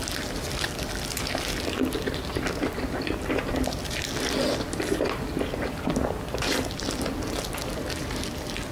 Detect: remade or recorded recorded